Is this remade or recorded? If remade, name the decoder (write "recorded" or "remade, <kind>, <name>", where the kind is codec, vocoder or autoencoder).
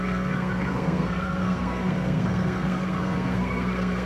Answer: remade, codec, SNAC